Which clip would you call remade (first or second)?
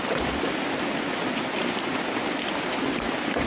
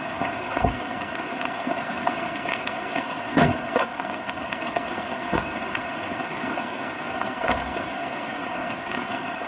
second